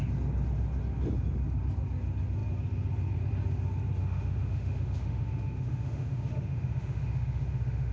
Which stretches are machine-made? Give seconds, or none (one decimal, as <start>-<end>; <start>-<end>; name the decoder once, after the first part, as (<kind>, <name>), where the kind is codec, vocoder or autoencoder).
4.0-7.9 (autoencoder, DAC-VAE)